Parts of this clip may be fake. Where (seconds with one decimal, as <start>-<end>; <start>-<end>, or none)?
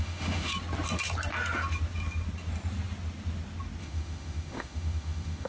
0.0-0.5; 3.8-5.5